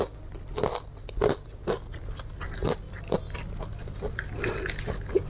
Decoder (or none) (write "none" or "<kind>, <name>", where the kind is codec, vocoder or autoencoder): none